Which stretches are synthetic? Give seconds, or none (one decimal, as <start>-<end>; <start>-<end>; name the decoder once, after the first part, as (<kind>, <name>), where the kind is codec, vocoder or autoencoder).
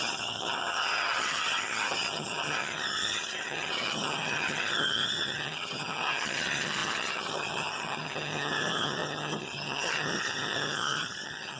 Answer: 0.0-11.6 (vocoder, HiFi-GAN)